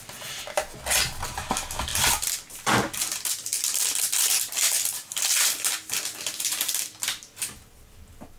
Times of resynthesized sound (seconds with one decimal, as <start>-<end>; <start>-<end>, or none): none